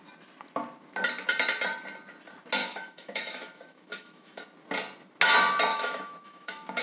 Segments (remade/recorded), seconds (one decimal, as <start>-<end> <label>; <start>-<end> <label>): 0.0-2.6 recorded; 2.6-4.4 remade; 4.4-5.7 recorded; 5.7-6.8 remade